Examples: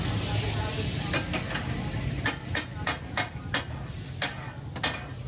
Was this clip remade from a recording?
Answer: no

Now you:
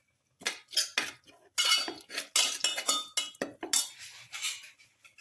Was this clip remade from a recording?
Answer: no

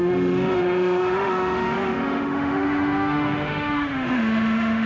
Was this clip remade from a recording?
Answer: yes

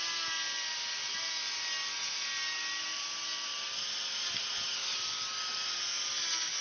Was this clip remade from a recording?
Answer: no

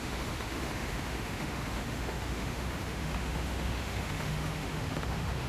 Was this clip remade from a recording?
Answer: yes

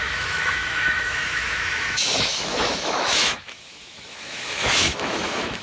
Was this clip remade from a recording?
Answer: yes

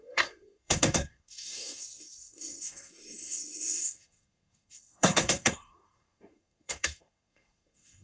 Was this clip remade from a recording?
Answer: yes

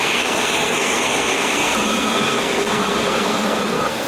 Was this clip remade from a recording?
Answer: yes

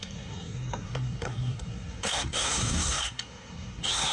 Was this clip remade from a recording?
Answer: yes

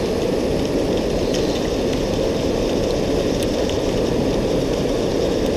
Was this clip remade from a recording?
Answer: no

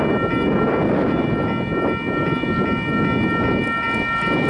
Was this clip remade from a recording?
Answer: no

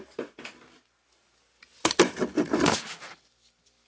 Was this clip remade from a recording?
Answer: no